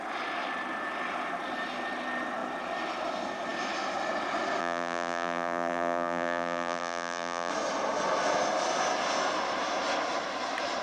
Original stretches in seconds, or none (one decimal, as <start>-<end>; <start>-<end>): 0.0-4.6; 7.5-10.8